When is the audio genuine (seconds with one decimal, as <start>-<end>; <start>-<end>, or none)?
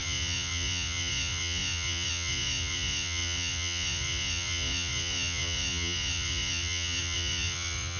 none